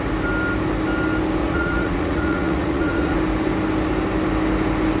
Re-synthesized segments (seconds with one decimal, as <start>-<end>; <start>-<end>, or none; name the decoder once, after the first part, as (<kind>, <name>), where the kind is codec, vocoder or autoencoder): 1.4-3.2 (vocoder, Vocos)

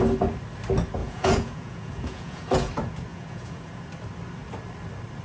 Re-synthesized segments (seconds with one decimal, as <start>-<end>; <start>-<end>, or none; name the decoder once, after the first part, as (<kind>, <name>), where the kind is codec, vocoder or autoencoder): 1.0-2.7 (vocoder, Vocos); 3.1-3.8

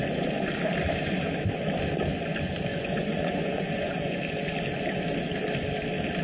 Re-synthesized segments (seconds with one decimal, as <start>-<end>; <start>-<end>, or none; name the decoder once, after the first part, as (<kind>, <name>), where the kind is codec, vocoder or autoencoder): 2.7-4.2 (vocoder, Vocos)

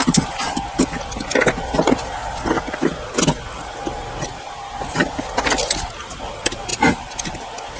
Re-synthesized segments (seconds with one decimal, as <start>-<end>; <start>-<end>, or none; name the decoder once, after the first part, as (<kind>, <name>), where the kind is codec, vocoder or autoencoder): none

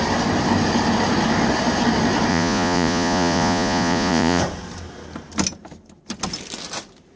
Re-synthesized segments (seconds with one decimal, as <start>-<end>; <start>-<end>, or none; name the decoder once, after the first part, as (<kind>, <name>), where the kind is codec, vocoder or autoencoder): 2.3-4.4 (vocoder, Vocos)